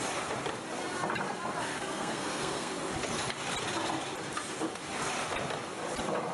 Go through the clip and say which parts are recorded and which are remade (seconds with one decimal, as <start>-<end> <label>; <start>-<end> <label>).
0.0-1.7 recorded; 1.7-2.7 remade; 2.7-6.3 recorded